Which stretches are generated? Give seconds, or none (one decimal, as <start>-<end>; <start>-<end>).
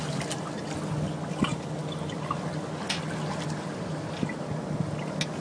none